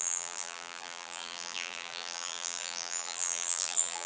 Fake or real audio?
fake